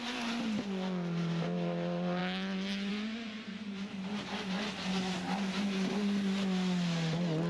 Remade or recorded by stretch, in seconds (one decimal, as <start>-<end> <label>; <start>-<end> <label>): 0.0-7.5 recorded